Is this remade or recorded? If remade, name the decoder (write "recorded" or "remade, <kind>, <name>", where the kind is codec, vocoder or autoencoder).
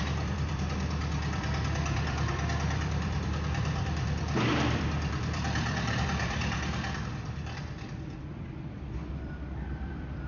remade, vocoder, BigVGAN v2